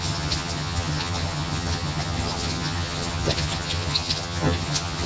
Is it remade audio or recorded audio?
remade